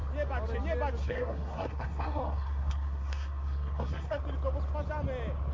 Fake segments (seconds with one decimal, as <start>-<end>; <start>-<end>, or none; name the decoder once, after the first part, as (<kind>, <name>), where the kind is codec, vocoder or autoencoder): 1.0-4.2 (codec, SNAC)

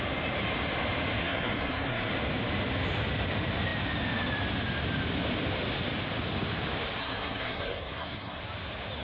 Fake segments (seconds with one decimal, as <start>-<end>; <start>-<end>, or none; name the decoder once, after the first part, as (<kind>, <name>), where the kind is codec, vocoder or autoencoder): 1.2-2.1 (codec, SNAC); 7.0-8.4

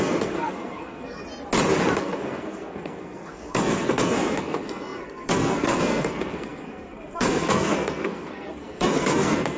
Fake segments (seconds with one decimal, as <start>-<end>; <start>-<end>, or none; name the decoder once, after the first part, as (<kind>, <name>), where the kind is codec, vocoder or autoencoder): 0.0-1.2 (codec, SNAC); 2.0-9.6

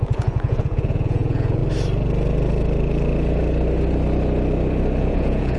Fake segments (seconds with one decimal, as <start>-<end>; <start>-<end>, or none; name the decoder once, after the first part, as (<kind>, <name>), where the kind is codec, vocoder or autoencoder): 0.0-1.6 (vocoder, Vocos); 5.0-5.6

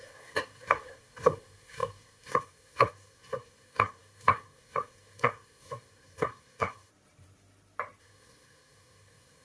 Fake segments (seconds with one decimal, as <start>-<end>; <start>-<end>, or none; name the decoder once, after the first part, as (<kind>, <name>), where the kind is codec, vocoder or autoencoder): 0.0-6.9 (codec, SNAC); 8.0-9.4

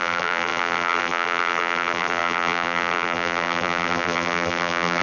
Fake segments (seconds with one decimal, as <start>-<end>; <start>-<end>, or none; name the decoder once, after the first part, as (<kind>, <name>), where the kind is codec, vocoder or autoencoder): 0.0-5.0 (vocoder, BigVGAN v2)

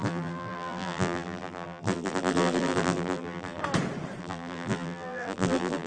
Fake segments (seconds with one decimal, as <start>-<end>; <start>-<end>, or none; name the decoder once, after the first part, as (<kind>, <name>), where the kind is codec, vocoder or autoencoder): 0.0-3.6 (vocoder, BigVGAN v2); 4.2-5.9

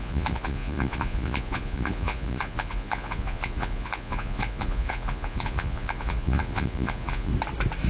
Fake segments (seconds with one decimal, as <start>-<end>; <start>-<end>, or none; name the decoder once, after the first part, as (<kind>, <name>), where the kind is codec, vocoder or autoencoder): 0.0-7.3 (vocoder, Vocos)